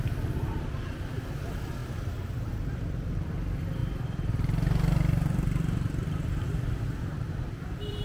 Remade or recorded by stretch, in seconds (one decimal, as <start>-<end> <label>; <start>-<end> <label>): 0.0-1.8 recorded; 1.8-3.1 remade; 3.1-3.8 recorded; 3.8-8.0 remade